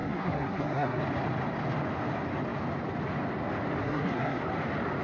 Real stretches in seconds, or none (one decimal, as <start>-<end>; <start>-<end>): 1.0-3.8; 4.4-5.0